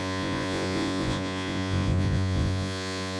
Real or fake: fake